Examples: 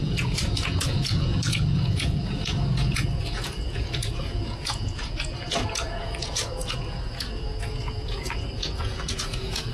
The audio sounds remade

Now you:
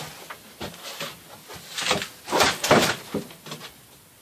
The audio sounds recorded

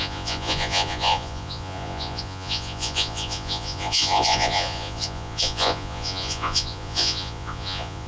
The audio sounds remade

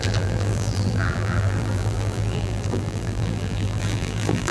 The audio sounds remade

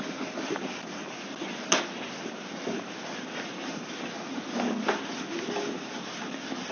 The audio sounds recorded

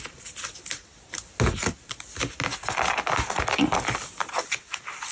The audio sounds recorded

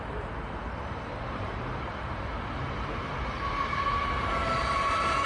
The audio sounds remade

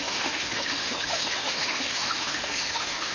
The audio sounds remade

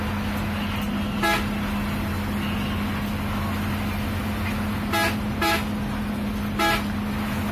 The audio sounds recorded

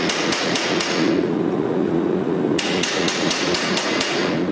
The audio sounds remade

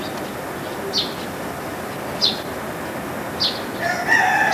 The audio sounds recorded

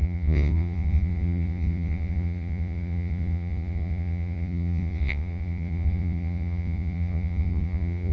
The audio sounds remade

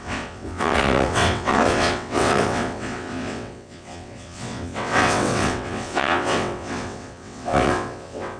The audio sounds remade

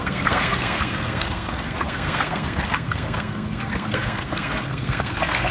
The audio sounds remade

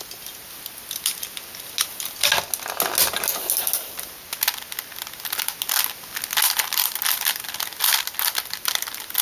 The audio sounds recorded